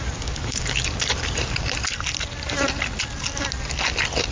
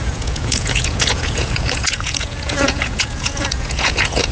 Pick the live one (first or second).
first